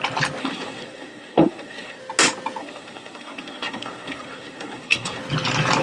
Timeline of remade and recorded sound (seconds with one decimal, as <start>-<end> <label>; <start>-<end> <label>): 0.0-0.4 recorded; 0.4-2.0 remade; 2.0-2.6 recorded; 2.6-5.2 remade; 5.2-5.8 recorded

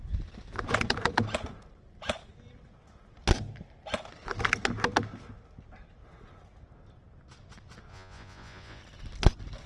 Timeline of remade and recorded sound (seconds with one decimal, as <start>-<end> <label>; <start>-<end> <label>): 0.0-7.9 recorded; 7.9-8.8 remade; 8.8-9.7 recorded

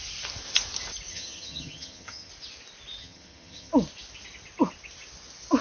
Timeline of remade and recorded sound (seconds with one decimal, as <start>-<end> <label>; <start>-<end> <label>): 0.0-1.1 recorded; 1.1-2.3 remade; 2.3-3.0 recorded; 3.0-3.7 remade; 3.7-5.6 recorded

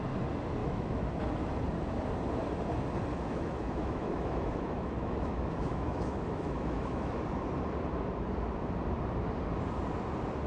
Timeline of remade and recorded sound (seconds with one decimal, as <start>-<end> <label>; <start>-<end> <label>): 0.0-0.6 recorded; 0.6-1.1 remade; 1.1-3.1 recorded; 3.1-7.2 remade; 7.2-10.5 recorded